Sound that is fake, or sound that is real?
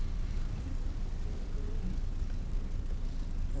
fake